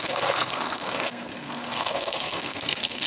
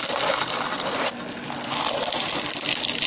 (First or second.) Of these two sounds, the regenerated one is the first